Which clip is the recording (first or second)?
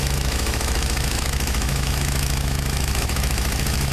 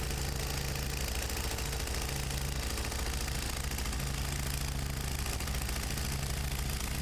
second